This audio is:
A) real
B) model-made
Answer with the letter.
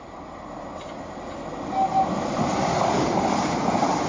A